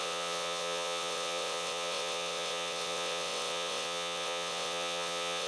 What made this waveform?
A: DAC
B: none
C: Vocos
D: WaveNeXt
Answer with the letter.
D